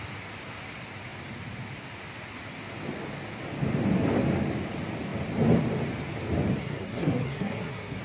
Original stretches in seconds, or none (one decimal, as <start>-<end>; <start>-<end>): 0.0-6.6